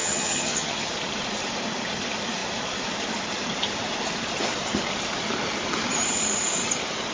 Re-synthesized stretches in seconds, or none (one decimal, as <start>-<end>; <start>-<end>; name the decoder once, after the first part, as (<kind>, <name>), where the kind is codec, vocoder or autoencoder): 0.0-0.9 (vocoder, HiFi-GAN)